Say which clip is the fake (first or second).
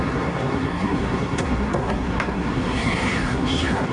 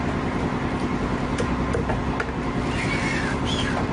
first